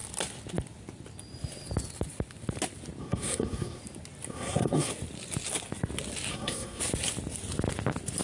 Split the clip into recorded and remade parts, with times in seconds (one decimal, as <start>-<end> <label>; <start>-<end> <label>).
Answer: 0.0-3.0 recorded; 3.0-3.8 remade; 3.8-4.3 recorded; 4.3-4.9 remade; 4.9-6.3 recorded; 6.3-6.8 remade; 6.8-8.2 recorded